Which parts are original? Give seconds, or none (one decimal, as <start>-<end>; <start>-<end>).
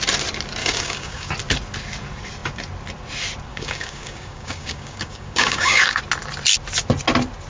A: 0.0-0.6; 1.3-3.5; 6.0-7.5